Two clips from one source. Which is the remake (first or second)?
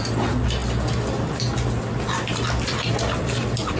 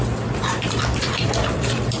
second